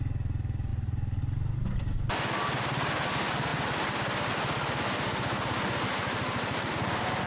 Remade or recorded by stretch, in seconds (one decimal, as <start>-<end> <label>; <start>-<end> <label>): 0.0-7.3 recorded